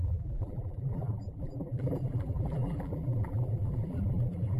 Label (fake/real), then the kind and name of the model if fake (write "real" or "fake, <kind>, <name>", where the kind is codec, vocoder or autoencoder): fake, vocoder, BigVGAN v2